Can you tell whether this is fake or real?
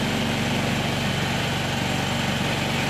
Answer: real